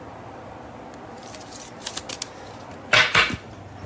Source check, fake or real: real